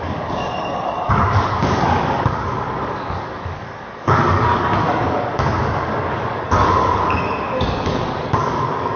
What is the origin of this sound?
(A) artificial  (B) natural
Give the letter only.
A